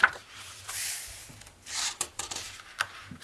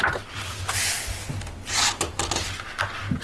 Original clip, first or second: second